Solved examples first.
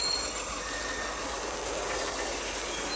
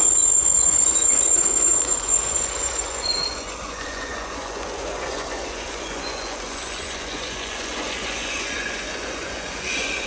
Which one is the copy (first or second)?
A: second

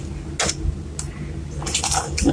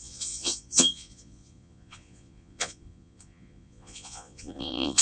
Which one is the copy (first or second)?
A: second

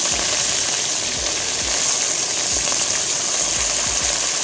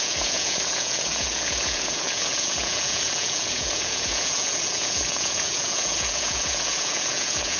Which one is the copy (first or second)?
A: second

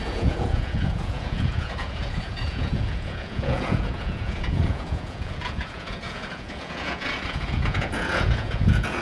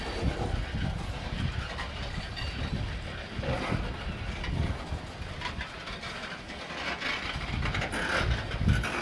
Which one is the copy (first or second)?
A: first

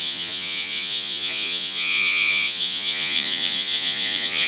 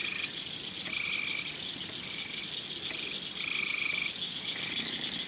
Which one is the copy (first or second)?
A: first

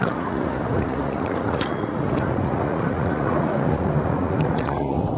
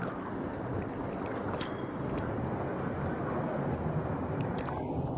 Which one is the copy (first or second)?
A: first